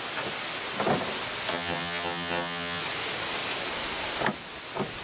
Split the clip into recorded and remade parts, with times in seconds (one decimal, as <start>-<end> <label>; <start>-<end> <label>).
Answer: 0.0-1.5 recorded; 1.5-2.8 remade; 2.8-5.0 recorded